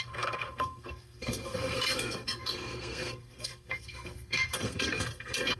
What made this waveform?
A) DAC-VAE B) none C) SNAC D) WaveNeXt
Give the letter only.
C